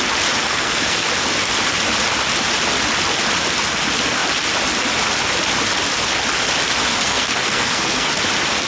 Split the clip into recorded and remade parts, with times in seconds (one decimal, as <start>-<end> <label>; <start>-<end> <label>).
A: 0.0-0.5 recorded; 0.5-1.1 remade; 1.1-6.9 recorded; 6.9-8.1 remade; 8.1-8.7 recorded